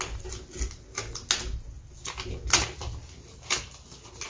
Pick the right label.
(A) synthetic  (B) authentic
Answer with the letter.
B